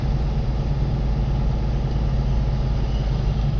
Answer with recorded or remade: recorded